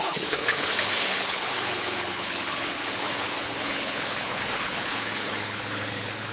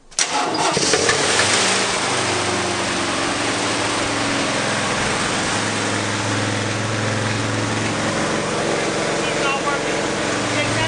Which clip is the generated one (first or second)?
first